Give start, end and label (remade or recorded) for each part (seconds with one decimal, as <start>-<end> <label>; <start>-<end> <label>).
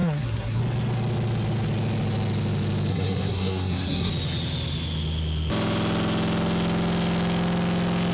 0.0-0.6 remade; 0.6-2.9 recorded; 2.9-4.1 remade; 4.1-8.1 recorded